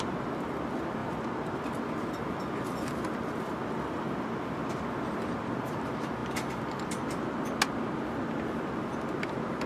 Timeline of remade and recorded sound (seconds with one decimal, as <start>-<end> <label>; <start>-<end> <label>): 0.0-9.7 recorded